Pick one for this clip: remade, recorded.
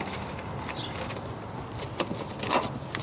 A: recorded